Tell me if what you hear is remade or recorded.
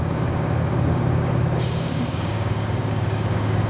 remade